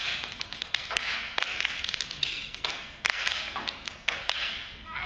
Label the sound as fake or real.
fake